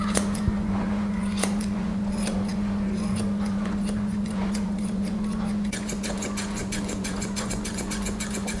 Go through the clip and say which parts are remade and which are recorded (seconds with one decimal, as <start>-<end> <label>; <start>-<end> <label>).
0.0-8.6 remade